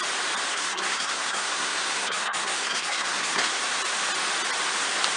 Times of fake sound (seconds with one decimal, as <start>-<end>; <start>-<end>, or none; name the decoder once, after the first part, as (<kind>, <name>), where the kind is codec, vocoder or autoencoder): 0.5-3.6 (codec, SNAC)